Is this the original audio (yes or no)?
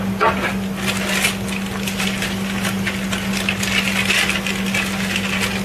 yes